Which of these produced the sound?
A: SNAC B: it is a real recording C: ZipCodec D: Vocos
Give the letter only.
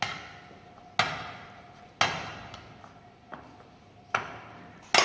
B